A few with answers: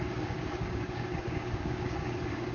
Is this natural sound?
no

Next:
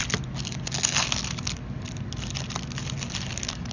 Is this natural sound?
yes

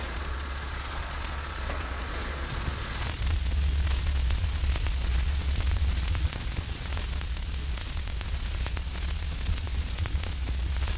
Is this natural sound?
no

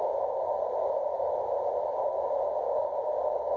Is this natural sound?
yes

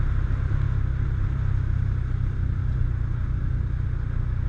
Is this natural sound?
yes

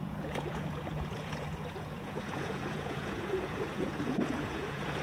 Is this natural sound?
no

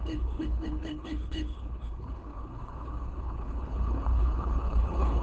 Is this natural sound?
no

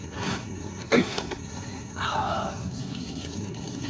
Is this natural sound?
no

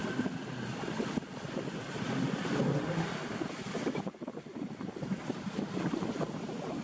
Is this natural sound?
yes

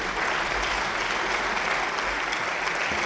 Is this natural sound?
yes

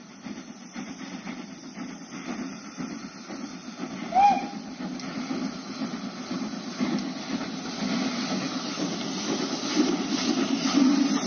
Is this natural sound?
yes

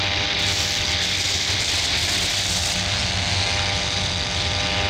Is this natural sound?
yes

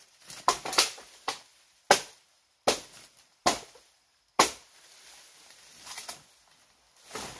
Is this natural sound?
yes